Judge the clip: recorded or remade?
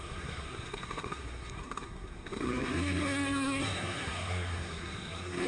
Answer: remade